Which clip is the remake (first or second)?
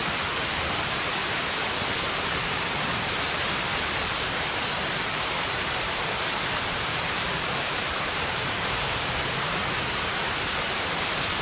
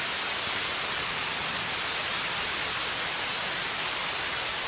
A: first